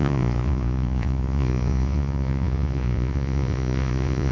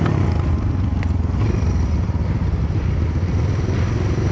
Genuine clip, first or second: second